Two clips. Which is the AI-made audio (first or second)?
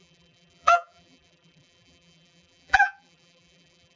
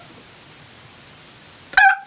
first